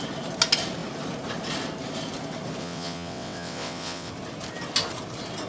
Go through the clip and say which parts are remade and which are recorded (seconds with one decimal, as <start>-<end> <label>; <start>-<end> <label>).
0.0-2.6 recorded; 2.6-4.1 remade; 4.1-5.5 recorded